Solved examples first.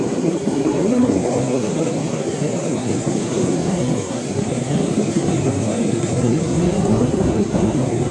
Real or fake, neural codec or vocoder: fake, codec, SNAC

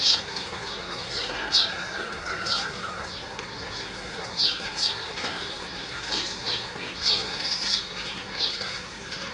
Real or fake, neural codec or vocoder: fake, codec, SNAC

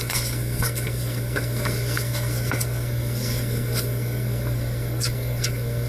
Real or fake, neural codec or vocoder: fake, codec, SNAC